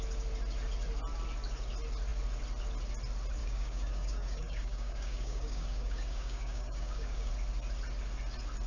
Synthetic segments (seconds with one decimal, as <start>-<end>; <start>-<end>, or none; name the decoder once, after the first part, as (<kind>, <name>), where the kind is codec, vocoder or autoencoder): 3.4-7.3 (codec, DAC)